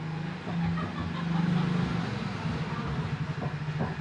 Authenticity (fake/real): real